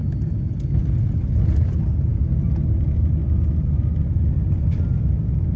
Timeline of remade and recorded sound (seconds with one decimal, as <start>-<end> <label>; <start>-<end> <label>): 0.0-0.8 remade; 0.8-5.6 recorded